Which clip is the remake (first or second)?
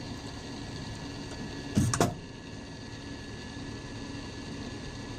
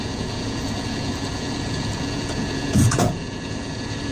second